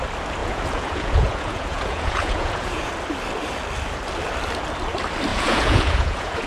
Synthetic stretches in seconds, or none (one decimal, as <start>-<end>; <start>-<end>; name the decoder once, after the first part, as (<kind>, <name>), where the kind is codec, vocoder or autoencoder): 0.4-2.9 (vocoder, Vocos); 5.3-6.5